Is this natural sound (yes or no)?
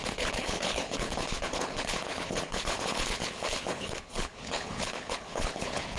no